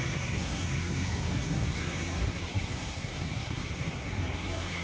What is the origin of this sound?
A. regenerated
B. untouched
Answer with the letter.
A